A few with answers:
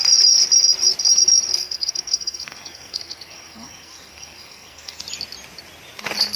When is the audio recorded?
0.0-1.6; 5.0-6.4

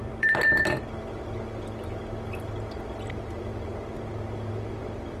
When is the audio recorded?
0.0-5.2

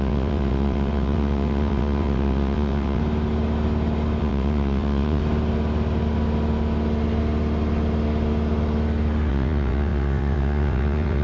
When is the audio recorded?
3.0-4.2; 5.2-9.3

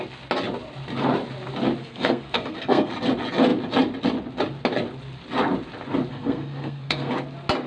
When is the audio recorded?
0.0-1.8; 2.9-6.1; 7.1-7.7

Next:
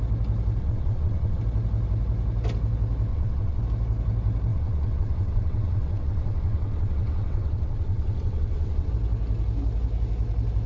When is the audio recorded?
0.0-0.6; 1.4-3.1; 3.6-4.5; 8.9-10.7

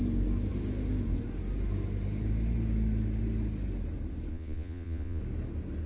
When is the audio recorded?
0.0-4.3; 5.2-5.9